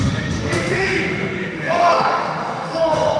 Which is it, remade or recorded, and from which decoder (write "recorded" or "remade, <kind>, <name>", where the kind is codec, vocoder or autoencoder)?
remade, autoencoder, DAC-VAE